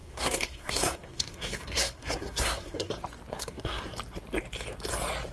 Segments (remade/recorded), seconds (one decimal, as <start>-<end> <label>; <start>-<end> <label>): 0.0-2.9 remade; 2.9-3.3 recorded; 3.3-3.8 remade; 3.8-5.3 recorded